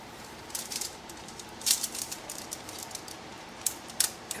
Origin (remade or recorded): remade